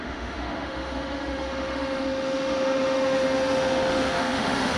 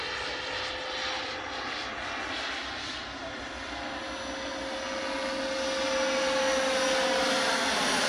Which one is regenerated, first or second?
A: first